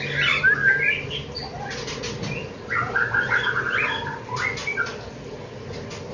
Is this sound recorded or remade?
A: recorded